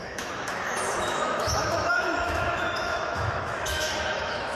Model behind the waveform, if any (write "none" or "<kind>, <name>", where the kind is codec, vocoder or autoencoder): autoencoder, DAC-VAE